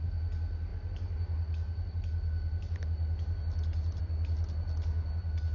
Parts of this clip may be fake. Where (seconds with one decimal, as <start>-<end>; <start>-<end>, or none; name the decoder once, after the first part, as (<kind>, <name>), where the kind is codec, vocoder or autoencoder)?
none